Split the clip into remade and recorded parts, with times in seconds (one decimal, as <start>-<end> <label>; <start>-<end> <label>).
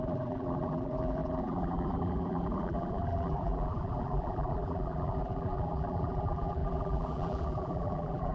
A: 0.0-8.3 remade